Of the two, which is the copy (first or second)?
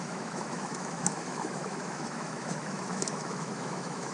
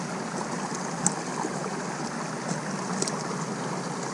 first